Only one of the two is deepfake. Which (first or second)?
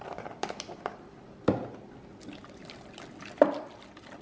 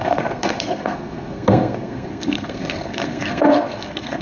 second